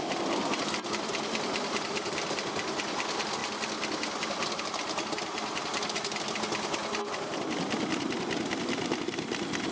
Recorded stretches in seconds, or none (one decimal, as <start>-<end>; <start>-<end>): 0.0-9.7